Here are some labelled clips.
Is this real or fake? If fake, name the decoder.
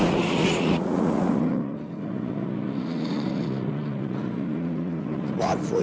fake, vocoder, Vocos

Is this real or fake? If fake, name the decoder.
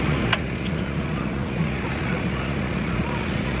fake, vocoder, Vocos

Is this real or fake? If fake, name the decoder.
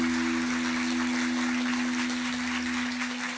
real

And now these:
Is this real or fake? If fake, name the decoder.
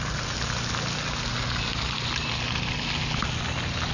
real